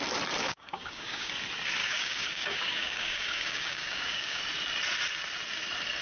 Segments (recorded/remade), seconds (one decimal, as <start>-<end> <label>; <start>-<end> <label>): 0.0-0.4 recorded; 0.4-1.3 remade; 1.3-1.8 recorded; 1.8-4.4 remade; 4.4-6.0 recorded